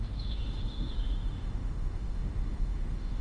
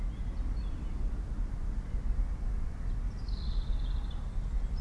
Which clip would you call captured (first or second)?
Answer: second